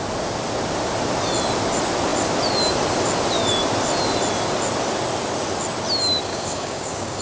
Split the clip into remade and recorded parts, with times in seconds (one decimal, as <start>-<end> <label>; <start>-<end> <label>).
0.0-6.3 recorded; 6.3-7.2 remade